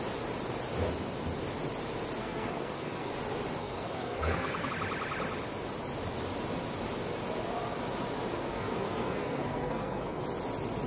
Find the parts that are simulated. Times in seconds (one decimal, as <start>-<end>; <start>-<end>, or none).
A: 2.2-3.1; 3.6-4.7; 8.3-10.2